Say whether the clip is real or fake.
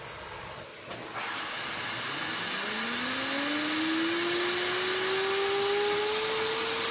real